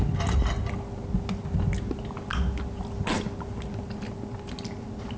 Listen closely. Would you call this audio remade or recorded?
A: recorded